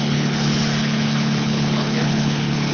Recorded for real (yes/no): no